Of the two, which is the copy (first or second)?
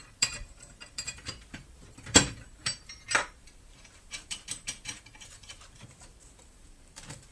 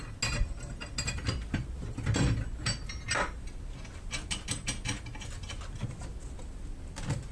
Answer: first